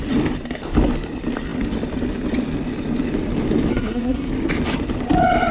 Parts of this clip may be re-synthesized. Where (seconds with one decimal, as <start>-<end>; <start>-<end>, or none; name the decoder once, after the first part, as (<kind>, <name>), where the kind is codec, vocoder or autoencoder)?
3.7-4.3 (codec, SNAC)

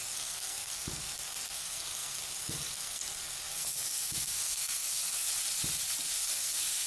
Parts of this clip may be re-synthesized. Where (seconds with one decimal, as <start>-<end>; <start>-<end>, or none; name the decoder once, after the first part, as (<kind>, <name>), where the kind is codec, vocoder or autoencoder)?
0.0-5.3 (codec, SNAC); 6.1-6.9

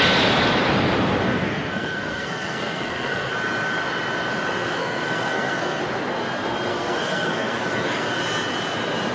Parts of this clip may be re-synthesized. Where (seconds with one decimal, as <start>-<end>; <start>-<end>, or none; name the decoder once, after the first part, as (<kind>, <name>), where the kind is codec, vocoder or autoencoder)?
1.3-3.3 (codec, SNAC); 4.8-5.8; 6.7-8.2

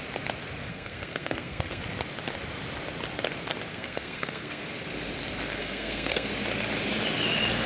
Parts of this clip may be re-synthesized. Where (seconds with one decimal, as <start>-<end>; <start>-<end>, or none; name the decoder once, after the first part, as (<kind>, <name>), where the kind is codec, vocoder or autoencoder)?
0.7-1.8 (codec, SNAC); 3.7-4.6; 5.6-6.3

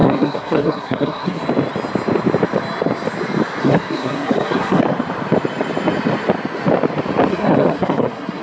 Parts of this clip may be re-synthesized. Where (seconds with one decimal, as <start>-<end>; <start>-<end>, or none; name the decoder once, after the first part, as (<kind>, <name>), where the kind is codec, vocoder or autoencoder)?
0.0-1.4 (codec, SNAC); 3.6-4.8; 7.3-8.4

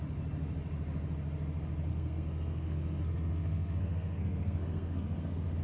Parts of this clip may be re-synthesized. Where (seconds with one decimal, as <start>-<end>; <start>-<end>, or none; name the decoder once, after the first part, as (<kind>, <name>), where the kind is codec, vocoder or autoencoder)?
1.9-5.6 (codec, SNAC)

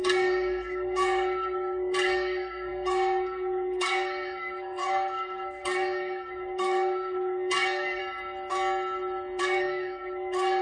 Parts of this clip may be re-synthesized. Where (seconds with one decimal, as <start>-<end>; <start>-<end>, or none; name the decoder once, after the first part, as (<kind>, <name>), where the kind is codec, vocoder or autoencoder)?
0.0-8.0 (codec, SNAC); 9.4-10.6